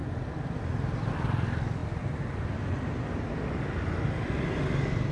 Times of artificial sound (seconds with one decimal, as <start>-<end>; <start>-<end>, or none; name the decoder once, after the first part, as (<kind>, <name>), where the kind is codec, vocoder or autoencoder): none